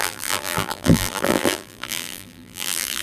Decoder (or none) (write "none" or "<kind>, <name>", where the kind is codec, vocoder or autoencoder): vocoder, BigVGAN v2